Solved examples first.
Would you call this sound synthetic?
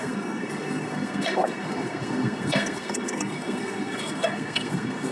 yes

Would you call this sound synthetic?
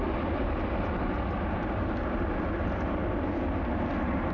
no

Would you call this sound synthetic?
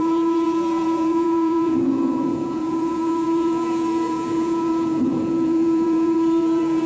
yes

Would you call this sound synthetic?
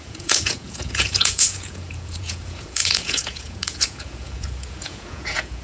yes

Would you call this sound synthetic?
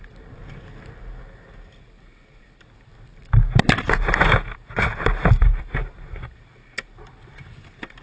no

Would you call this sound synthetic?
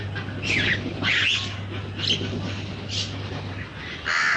no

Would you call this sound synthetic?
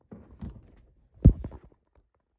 no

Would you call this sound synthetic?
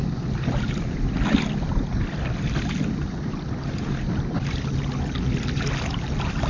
no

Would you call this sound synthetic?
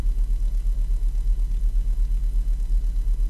no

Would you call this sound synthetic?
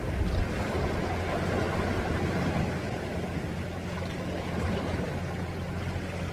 no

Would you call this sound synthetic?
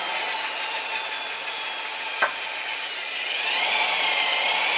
no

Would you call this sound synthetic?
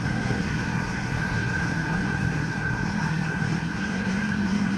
yes